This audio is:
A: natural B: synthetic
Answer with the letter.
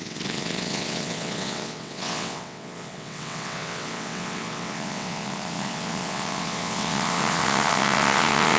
B